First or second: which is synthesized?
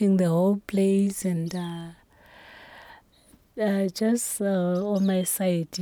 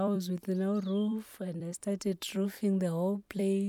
second